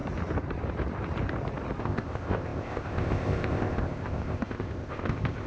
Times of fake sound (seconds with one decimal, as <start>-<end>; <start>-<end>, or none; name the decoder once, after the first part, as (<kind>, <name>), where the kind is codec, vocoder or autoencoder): 1.8-5.5 (codec, ZipCodec)